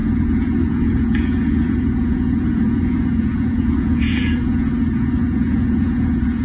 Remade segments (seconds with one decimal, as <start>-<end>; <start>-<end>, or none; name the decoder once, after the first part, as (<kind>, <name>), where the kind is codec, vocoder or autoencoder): 0.0-6.4 (vocoder, Vocos)